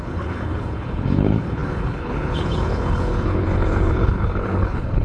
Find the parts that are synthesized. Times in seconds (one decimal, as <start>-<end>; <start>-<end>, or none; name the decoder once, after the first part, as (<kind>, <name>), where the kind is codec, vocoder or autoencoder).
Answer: 0.0-5.0 (codec, HILCodec)